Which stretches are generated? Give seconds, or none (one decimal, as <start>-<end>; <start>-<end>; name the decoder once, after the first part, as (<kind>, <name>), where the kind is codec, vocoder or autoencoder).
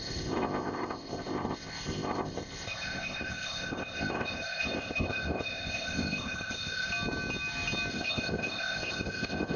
0.0-6.9 (codec, ZipCodec); 7.9-9.6